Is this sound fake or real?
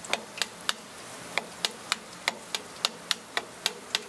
real